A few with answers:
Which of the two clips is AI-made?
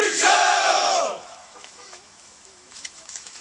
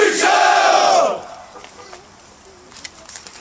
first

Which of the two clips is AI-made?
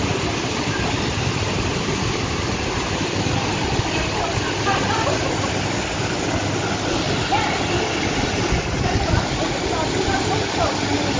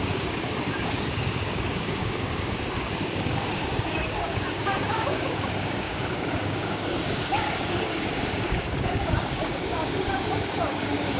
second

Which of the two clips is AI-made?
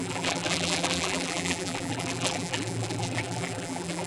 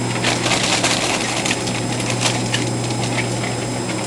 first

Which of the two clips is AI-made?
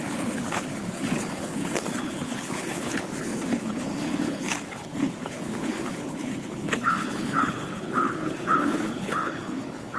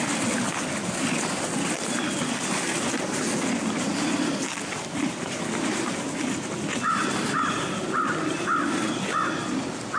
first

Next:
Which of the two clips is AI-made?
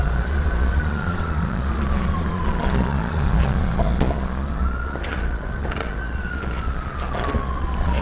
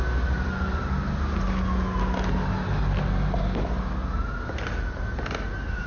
first